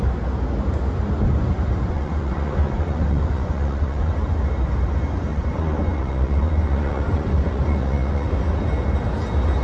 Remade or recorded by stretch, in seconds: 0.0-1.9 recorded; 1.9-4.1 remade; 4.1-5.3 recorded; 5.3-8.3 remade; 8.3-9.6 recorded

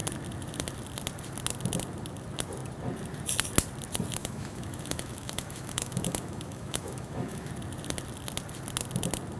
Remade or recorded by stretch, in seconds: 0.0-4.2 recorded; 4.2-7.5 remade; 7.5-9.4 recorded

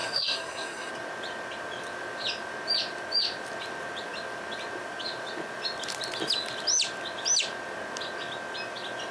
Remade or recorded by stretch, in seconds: 0.0-0.9 remade; 0.9-9.1 recorded